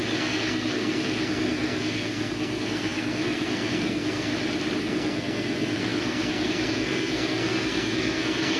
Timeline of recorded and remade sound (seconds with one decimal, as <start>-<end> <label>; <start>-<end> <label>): 0.0-4.3 remade; 4.3-4.8 recorded; 4.8-8.6 remade